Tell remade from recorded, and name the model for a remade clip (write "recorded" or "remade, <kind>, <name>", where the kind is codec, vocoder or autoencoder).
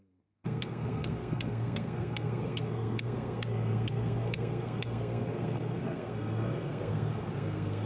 remade, codec, SNAC